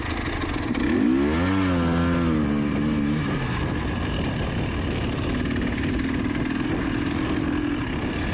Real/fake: real